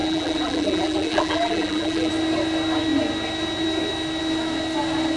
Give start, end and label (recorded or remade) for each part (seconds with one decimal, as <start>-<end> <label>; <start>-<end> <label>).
0.0-2.1 remade; 2.1-5.2 recorded

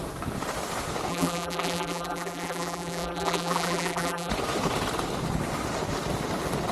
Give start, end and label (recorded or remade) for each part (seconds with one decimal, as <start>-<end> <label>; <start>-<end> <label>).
0.0-1.1 recorded; 1.1-4.3 remade; 4.3-6.7 recorded

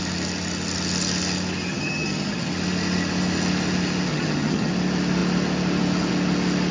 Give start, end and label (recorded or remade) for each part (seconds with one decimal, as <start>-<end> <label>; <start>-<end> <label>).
0.0-1.7 recorded; 1.7-2.5 remade; 2.5-4.1 recorded; 4.1-4.7 remade; 4.7-6.7 recorded

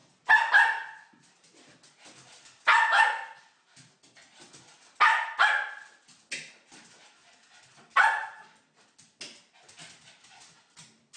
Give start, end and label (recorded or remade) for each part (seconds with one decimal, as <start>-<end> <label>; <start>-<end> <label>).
0.0-11.2 recorded

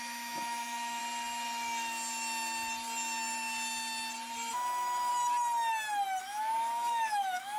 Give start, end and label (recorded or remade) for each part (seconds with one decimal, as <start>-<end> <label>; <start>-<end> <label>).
0.0-1.0 remade; 1.0-4.5 recorded; 4.5-5.1 remade; 5.1-6.2 recorded; 6.2-7.6 remade